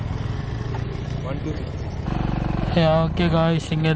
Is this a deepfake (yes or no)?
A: no